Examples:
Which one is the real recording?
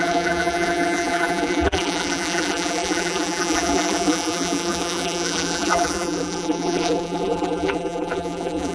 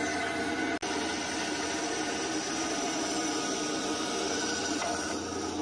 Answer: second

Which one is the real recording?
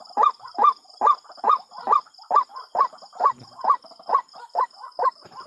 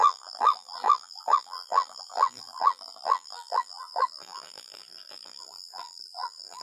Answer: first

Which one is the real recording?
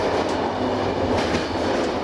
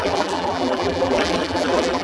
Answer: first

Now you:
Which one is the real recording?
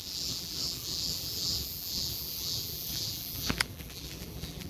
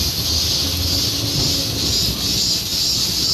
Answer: second